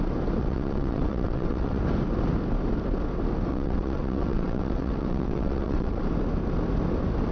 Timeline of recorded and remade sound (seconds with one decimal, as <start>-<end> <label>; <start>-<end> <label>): 0.0-0.4 recorded; 0.4-1.8 remade; 1.8-3.5 recorded; 3.5-6.0 remade; 6.0-7.3 recorded